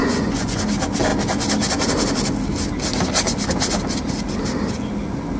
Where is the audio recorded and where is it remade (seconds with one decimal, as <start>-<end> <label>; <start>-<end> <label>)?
0.0-0.6 remade; 0.6-5.4 recorded